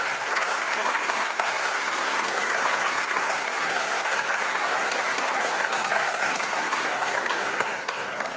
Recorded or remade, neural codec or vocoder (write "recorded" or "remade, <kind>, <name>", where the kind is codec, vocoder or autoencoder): remade, codec, SNAC